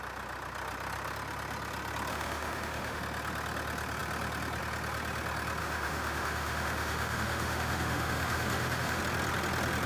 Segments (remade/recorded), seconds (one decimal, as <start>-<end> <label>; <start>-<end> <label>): 0.0-2.1 recorded; 2.1-3.0 remade; 3.0-5.6 recorded; 5.6-9.0 remade; 9.0-9.9 recorded